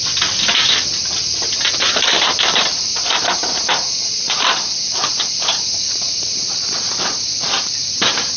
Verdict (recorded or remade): remade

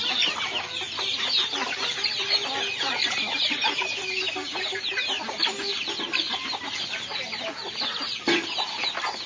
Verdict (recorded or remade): recorded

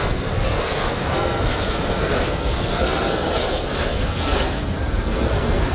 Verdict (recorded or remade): remade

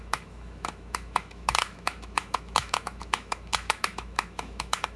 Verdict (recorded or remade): remade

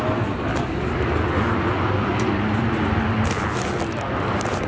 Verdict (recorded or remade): recorded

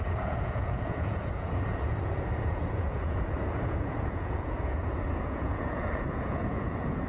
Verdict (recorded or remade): remade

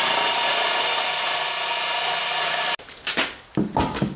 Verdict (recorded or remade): recorded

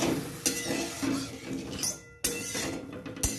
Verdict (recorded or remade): recorded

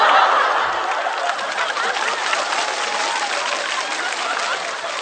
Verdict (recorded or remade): recorded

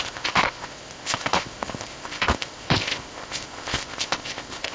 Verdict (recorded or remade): remade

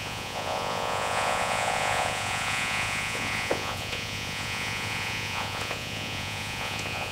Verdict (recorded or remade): remade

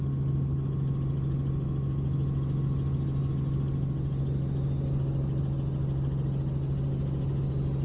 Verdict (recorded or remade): recorded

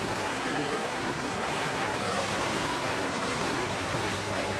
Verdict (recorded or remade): remade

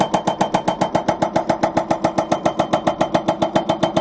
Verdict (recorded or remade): recorded